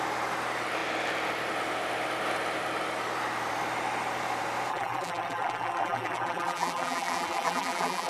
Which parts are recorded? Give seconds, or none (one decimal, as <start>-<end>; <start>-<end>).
0.0-4.7